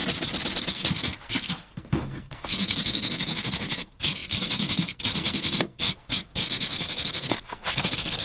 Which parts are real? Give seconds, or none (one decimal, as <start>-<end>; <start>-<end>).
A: 0.0-0.7